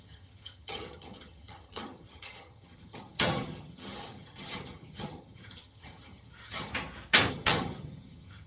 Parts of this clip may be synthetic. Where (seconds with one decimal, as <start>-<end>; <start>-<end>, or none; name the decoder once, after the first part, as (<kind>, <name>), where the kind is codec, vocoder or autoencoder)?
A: 0.0-6.7 (vocoder, HiFi-GAN); 7.3-8.5

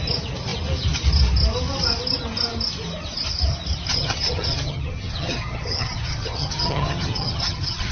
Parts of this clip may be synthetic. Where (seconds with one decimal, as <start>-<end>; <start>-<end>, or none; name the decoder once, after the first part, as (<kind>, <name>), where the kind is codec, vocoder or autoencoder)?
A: 3.9-7.9 (vocoder, HiFi-GAN)

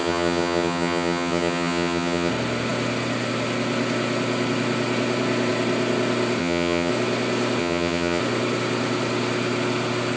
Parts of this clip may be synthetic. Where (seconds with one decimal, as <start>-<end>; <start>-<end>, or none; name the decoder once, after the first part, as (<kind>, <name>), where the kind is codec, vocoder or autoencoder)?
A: 0.0-2.3 (vocoder, HiFi-GAN); 6.4-6.9; 7.6-8.2

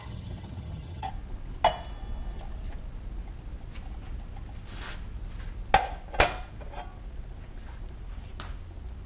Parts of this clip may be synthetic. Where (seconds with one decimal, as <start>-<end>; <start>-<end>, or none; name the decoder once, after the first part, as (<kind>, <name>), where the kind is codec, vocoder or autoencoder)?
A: 0.0-1.1 (vocoder, HiFi-GAN)

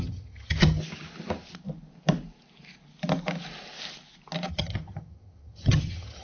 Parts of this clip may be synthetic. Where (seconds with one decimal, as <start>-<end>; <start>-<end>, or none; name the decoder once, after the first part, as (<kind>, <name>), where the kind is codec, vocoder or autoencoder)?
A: 0.0-0.8 (vocoder, HiFi-GAN); 4.5-6.2